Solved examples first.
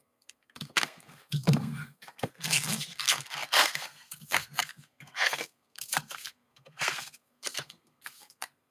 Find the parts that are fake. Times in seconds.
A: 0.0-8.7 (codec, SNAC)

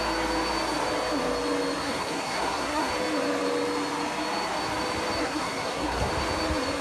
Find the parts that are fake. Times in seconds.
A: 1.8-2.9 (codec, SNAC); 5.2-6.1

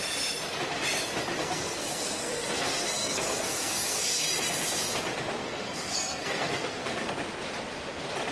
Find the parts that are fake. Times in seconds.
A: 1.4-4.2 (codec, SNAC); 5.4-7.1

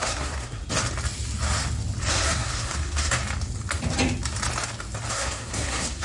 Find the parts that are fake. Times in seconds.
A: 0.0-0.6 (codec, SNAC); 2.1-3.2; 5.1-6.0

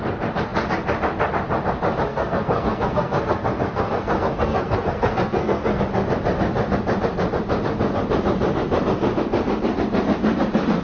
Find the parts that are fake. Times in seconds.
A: 2.1-5.8 (codec, SNAC)